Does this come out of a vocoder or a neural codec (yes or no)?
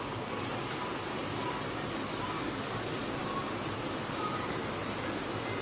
no